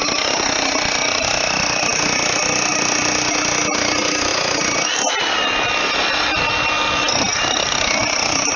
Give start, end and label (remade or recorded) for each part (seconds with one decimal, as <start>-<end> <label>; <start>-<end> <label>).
0.0-8.6 recorded